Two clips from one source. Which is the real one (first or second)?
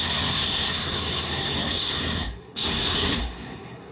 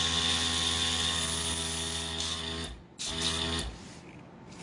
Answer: second